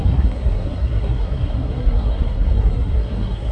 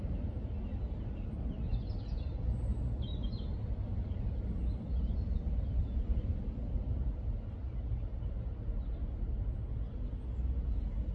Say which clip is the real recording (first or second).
second